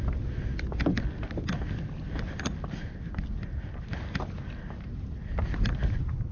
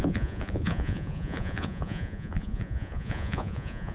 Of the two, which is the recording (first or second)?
first